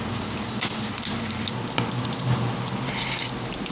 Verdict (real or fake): fake